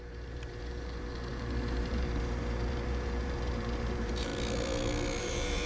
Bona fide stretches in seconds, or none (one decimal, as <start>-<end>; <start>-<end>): 4.3-5.2